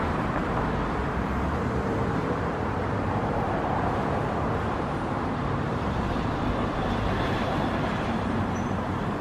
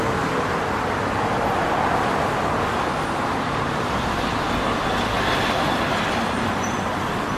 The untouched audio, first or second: second